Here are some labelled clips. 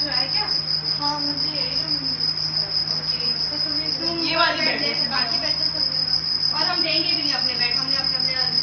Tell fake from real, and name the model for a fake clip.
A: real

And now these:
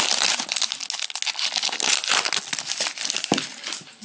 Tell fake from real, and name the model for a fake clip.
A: real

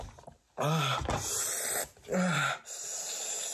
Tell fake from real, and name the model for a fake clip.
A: real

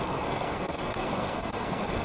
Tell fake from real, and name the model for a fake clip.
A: fake, codec, SNAC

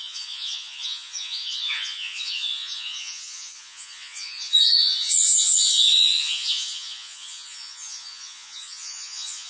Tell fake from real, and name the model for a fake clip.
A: fake, vocoder, Vocos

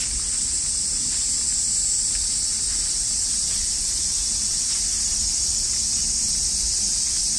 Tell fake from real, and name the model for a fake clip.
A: real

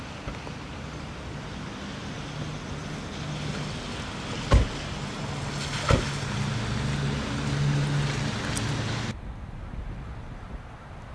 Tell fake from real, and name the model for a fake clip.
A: real